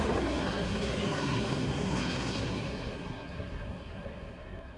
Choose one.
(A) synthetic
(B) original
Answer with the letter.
A